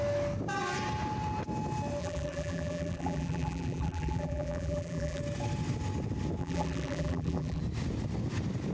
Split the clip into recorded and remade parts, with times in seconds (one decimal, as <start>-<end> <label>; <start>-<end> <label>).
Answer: 0.0-2.0 recorded; 2.0-5.2 remade; 5.2-6.4 recorded; 6.4-7.6 remade; 7.6-8.7 recorded